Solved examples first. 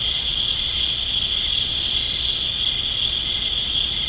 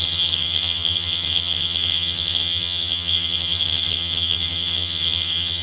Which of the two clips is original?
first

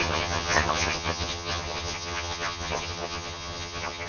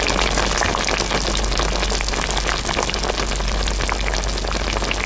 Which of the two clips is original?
second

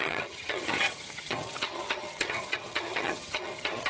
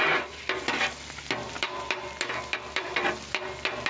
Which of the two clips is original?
second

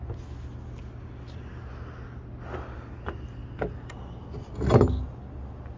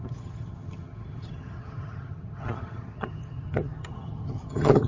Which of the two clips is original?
first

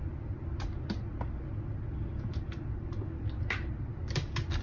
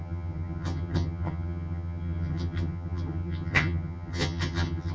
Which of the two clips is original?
first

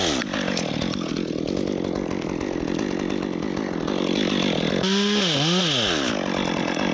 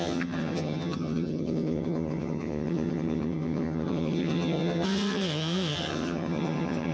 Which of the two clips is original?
first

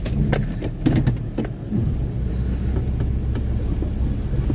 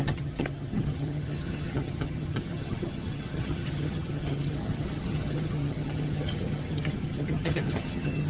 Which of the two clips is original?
first